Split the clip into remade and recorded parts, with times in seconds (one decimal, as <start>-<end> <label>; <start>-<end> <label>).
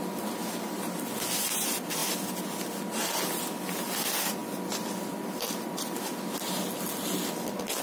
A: 0.0-0.4 recorded; 0.4-1.1 remade; 1.1-4.4 recorded; 4.4-6.0 remade; 6.0-7.8 recorded